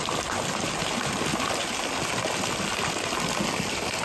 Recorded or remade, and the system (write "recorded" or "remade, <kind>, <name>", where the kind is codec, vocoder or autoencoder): recorded